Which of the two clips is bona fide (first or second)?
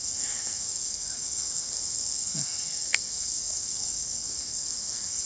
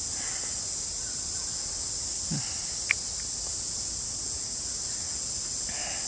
second